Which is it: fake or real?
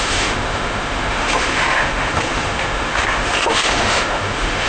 fake